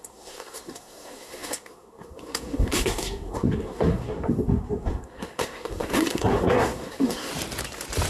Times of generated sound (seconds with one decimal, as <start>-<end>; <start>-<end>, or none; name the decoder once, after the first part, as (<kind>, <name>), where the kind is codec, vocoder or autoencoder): 0.0-7.3 (codec, SNAC)